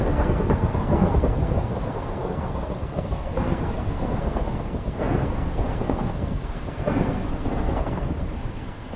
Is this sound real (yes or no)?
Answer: no